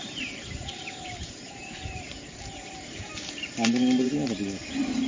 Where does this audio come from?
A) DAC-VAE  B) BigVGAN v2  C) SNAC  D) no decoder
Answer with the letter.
B